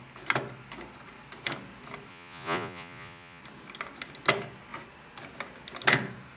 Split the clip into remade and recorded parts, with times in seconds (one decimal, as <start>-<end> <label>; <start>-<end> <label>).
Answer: 0.0-2.1 recorded; 2.1-3.4 remade; 3.4-6.4 recorded